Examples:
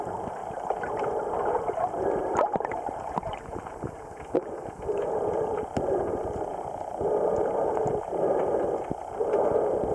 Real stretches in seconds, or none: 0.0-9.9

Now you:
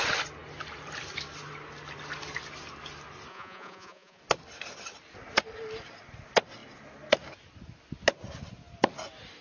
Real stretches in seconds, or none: 0.0-3.3; 4.2-9.4

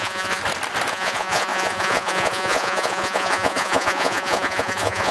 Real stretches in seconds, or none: 0.4-0.9

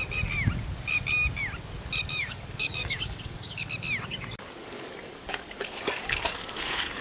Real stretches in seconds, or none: 0.0-2.0; 3.7-4.6

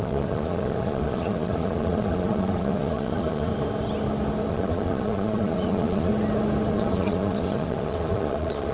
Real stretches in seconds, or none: 3.5-4.5; 6.1-6.7

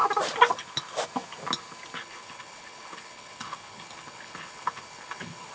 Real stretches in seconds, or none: 0.0-2.0